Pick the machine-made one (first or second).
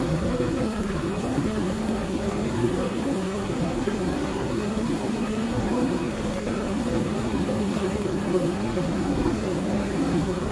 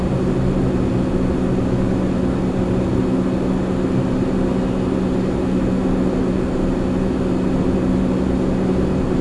first